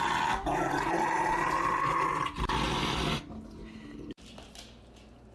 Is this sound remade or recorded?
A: recorded